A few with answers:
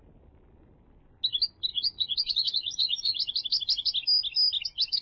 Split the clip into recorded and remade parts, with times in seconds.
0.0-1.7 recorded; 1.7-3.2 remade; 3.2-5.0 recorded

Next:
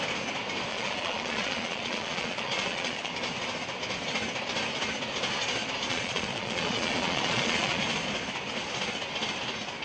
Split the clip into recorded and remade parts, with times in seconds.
0.0-0.7 recorded; 0.7-3.1 remade; 3.1-5.9 recorded; 5.9-7.8 remade; 7.8-9.8 recorded